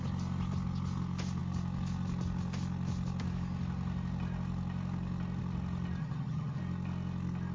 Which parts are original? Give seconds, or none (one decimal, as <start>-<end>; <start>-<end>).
0.0-6.0; 6.6-7.5